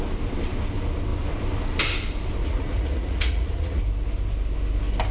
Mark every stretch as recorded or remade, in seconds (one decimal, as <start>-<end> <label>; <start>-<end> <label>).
0.0-2.4 recorded; 2.4-3.8 remade; 3.8-5.1 recorded